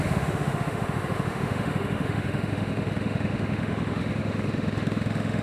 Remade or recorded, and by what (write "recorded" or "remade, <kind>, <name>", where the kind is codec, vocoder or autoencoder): remade, autoencoder, DAC-VAE